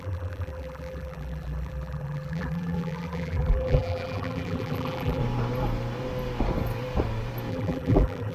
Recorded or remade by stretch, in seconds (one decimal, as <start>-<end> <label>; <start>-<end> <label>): 0.0-5.2 remade; 5.2-7.5 recorded; 7.5-8.3 remade

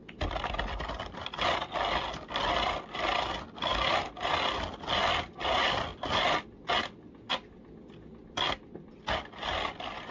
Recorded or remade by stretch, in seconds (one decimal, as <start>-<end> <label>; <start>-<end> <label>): 0.0-10.1 recorded

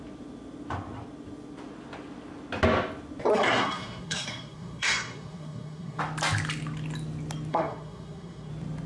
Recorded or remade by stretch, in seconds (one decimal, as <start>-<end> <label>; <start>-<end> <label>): 0.0-3.3 recorded; 3.3-6.0 remade; 6.0-7.5 recorded; 7.5-8.5 remade; 8.5-8.9 recorded

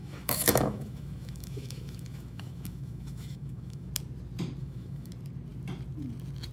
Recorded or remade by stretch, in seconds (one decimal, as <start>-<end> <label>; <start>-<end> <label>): 0.0-3.9 remade; 3.9-4.6 recorded; 4.6-5.1 remade; 5.1-6.5 recorded

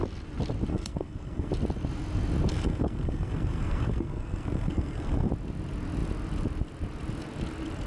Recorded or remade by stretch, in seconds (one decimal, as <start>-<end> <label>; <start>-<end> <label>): 0.0-0.7 recorded; 0.7-1.5 remade; 1.5-2.5 recorded; 2.5-5.3 remade; 5.3-7.9 recorded